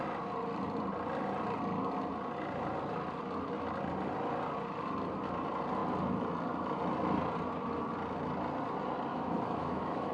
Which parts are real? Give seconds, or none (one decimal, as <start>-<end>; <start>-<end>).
0.0-9.1